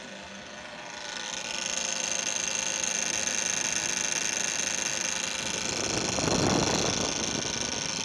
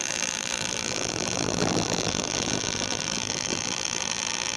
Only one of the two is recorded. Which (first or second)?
first